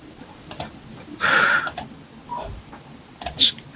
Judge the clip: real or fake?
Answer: real